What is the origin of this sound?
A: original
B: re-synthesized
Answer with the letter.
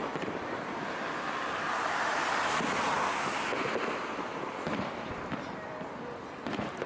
A